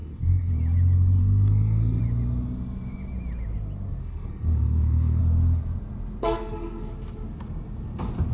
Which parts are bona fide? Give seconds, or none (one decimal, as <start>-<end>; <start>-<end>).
0.5-1.2; 2.0-4.0; 5.2-6.2; 6.9-8.3